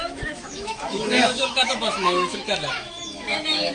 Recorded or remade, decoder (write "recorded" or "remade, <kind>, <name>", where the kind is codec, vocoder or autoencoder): remade, autoencoder, DAC-VAE